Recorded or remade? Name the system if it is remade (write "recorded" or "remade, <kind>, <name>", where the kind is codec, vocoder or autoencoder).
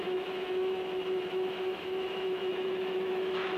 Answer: remade, autoencoder, DAC-VAE